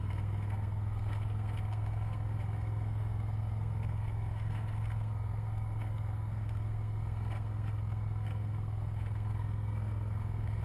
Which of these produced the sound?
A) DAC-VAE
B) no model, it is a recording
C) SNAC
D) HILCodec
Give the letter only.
C